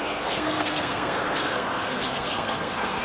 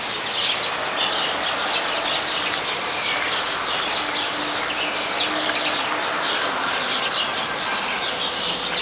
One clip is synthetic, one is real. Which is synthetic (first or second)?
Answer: first